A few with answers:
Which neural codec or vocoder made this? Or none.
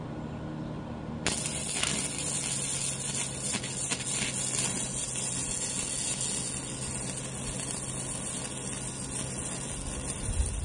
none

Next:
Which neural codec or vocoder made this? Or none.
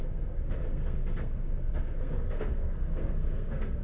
codec, SNAC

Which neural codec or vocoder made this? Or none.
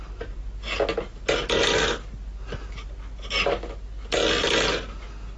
none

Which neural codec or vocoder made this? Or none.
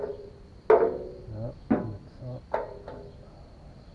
none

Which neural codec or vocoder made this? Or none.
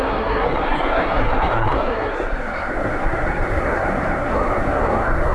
codec, SNAC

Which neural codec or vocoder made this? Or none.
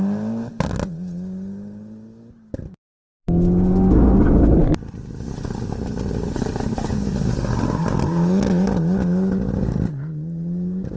none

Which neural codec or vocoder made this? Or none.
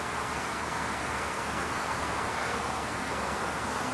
codec, SNAC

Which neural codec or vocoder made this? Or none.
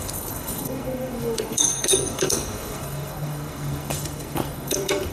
codec, SNAC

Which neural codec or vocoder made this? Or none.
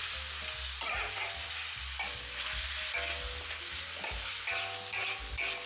none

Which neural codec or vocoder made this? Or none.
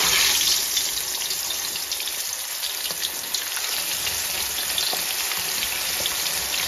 none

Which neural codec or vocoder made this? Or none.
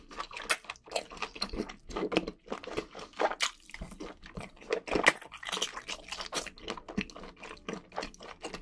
none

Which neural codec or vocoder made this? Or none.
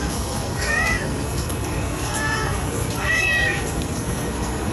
codec, SNAC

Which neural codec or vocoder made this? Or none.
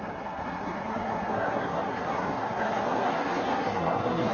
codec, SNAC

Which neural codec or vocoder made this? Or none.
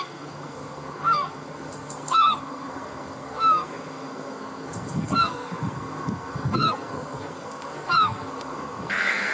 codec, SNAC